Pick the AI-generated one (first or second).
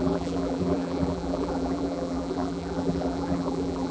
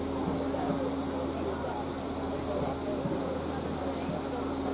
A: first